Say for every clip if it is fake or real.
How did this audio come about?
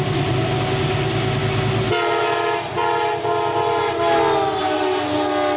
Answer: real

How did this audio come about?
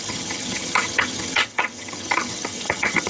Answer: fake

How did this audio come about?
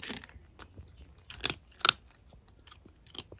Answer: real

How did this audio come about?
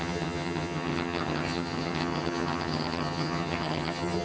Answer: fake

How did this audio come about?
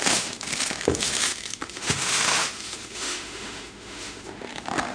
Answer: fake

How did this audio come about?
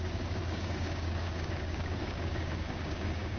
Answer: fake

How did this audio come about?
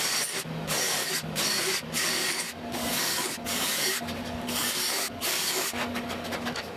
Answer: fake